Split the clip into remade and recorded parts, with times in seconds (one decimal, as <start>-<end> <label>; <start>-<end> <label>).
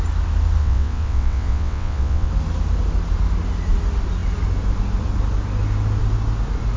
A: 0.0-0.6 recorded; 0.6-2.3 remade; 2.3-6.8 recorded